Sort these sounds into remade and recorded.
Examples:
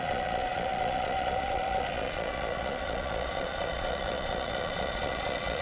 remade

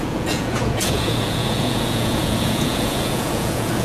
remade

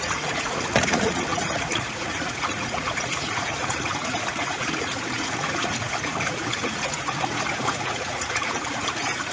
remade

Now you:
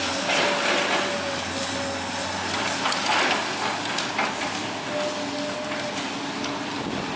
recorded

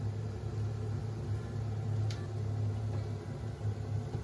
recorded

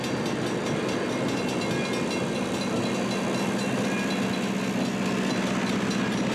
recorded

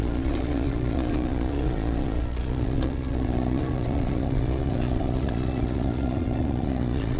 remade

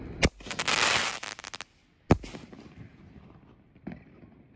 recorded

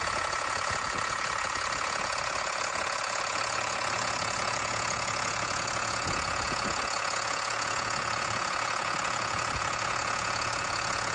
remade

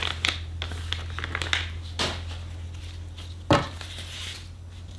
recorded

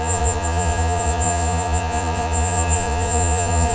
remade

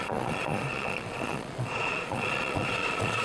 remade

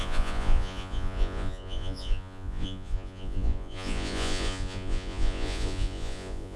remade